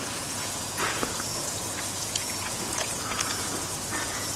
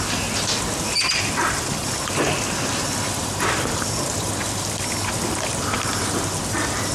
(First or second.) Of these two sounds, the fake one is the first